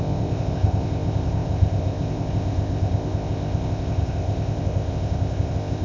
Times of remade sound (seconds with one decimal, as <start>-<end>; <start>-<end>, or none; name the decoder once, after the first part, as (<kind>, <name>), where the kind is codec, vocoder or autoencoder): 0.0-5.8 (codec, ZipCodec)